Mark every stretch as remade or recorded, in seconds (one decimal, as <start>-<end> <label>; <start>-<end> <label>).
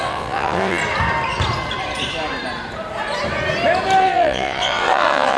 0.0-0.8 remade; 0.8-4.0 recorded; 4.0-5.4 remade